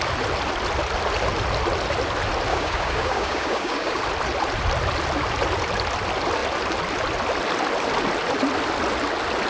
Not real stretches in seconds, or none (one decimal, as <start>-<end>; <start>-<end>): 2.5-4.0